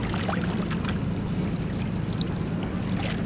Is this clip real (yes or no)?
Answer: yes